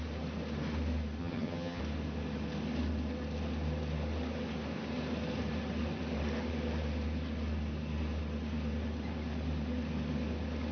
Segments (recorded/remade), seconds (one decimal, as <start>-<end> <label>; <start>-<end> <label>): 0.0-1.2 recorded; 1.2-1.8 remade; 1.8-10.7 recorded

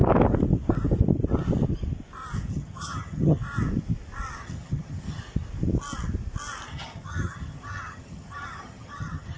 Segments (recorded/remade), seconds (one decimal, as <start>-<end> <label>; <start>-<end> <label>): 0.0-2.5 recorded; 2.5-3.4 remade; 3.4-4.4 recorded; 4.4-5.2 remade; 5.2-6.7 recorded; 6.7-9.4 remade

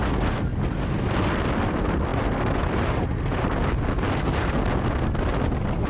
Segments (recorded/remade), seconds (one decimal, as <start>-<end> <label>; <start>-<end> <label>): 0.0-5.9 recorded

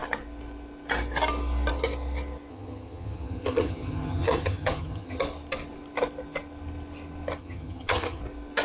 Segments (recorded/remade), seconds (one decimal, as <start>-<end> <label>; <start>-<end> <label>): 0.0-2.5 recorded; 2.5-5.2 remade; 5.2-7.4 recorded; 7.4-8.2 remade; 8.2-8.6 recorded

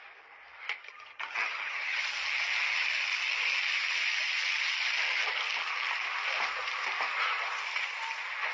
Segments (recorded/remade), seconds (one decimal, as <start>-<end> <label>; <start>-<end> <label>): 0.0-0.8 recorded; 0.8-2.0 remade; 2.0-8.5 recorded

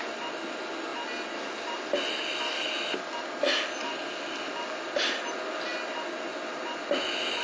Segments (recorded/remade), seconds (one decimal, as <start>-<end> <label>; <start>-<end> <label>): 0.0-7.4 recorded

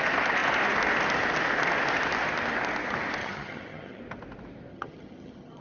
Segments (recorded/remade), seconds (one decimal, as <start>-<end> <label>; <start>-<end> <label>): 0.0-3.2 recorded; 3.2-4.0 remade; 4.0-4.7 recorded; 4.7-5.6 remade

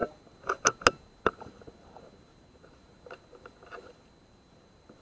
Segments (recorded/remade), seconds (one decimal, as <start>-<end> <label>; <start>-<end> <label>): 0.0-5.0 recorded